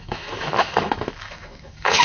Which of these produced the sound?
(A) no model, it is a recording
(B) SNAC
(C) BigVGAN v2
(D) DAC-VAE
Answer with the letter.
D